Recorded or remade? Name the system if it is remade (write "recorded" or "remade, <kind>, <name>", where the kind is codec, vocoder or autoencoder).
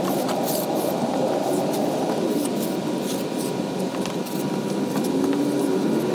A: recorded